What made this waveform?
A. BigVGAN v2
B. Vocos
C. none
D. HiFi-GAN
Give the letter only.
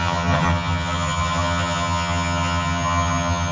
D